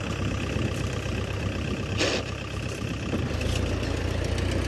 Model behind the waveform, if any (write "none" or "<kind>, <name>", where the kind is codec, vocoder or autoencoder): none